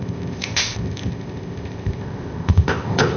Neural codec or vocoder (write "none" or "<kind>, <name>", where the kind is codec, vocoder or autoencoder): codec, ZipCodec